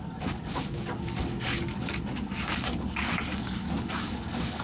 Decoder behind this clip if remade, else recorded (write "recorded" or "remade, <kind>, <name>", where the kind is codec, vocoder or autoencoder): remade, codec, DAC